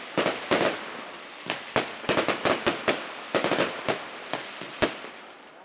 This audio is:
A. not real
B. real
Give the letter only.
B